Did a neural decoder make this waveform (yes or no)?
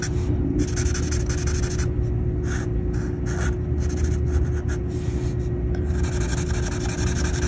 no